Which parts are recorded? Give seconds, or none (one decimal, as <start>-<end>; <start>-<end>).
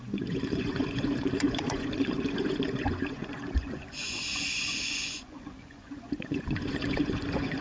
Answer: none